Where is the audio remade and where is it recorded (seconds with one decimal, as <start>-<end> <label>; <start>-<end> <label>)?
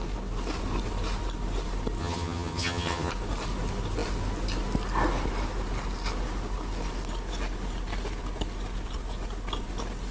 0.0-2.0 recorded; 2.0-3.1 remade; 3.1-10.1 recorded